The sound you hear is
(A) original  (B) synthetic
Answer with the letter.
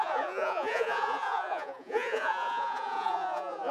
B